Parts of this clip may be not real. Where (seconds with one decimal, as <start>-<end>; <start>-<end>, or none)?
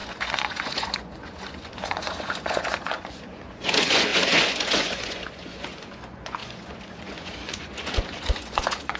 0.0-9.0